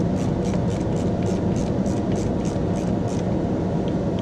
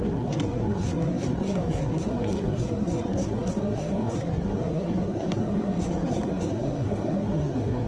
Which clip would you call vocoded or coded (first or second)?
second